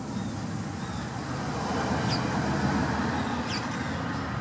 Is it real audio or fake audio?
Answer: real